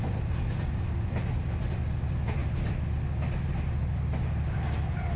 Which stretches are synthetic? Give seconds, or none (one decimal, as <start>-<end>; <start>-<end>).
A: none